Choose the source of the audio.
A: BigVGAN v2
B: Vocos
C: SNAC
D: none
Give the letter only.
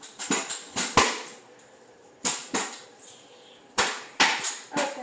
D